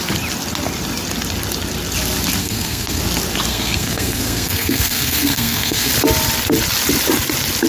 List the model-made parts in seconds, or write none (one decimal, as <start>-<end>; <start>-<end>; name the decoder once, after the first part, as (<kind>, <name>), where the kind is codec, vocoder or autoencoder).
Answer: 2.4-3.0 (codec, SNAC); 3.5-5.9